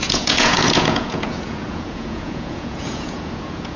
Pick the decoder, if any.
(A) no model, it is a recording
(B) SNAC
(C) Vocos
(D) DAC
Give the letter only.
C